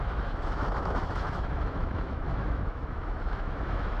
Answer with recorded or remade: remade